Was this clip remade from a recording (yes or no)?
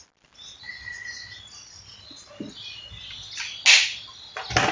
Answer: no